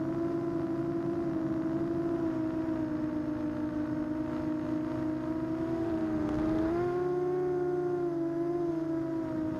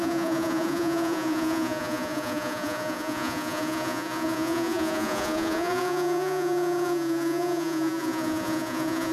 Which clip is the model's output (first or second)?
second